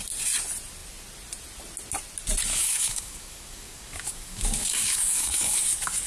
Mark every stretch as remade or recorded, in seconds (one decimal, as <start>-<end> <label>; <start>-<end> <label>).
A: 0.0-2.5 recorded; 2.5-6.1 remade